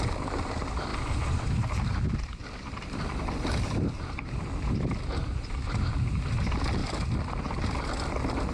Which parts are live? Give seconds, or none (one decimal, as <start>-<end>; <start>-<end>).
0.0-8.5